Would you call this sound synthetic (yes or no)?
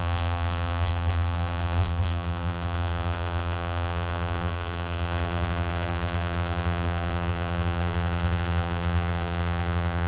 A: yes